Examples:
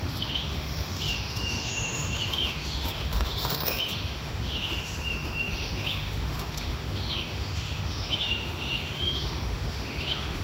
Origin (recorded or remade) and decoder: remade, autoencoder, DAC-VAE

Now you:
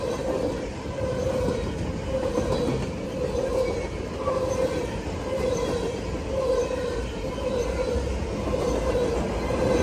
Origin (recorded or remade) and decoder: recorded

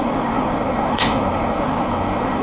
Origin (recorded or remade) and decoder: remade, codec, SNAC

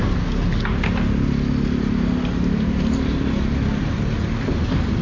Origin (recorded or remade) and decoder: recorded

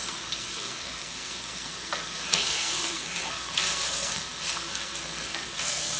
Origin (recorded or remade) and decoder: remade, codec, SNAC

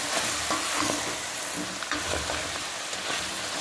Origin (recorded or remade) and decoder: recorded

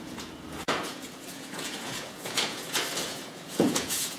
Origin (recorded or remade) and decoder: remade, vocoder, Vocos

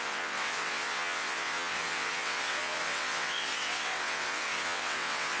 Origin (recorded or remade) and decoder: remade, vocoder, WaveNeXt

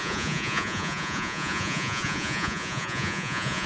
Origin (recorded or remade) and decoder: remade, vocoder, Vocos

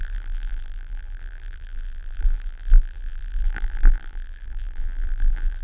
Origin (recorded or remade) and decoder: remade, vocoder, BigVGAN v2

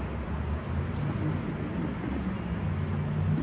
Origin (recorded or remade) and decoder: recorded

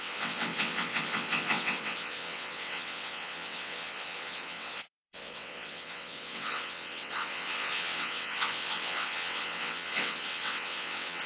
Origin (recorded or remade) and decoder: remade, vocoder, WaveNeXt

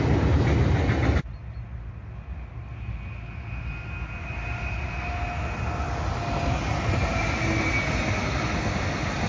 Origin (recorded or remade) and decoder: recorded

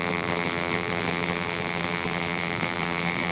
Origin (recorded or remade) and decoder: remade, vocoder, BigVGAN v2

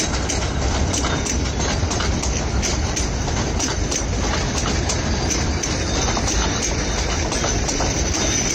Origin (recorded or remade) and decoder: recorded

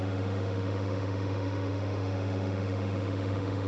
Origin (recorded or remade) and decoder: remade, autoencoder, DAC-VAE